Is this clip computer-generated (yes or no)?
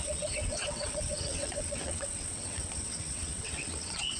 yes